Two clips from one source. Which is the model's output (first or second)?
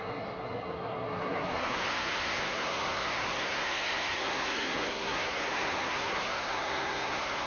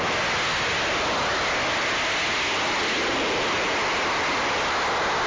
first